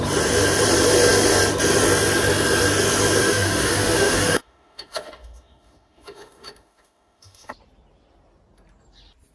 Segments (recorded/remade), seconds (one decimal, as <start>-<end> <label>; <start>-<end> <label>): 0.0-3.2 recorded; 3.2-7.5 remade; 7.5-9.3 recorded